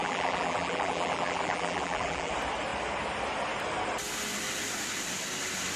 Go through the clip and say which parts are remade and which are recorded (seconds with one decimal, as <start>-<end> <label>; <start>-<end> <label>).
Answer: 0.0-2.3 remade; 2.3-5.8 recorded